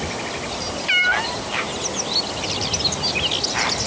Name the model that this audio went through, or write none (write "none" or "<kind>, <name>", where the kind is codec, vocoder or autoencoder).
none